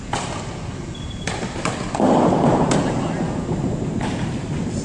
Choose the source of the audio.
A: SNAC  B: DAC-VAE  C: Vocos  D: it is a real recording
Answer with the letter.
D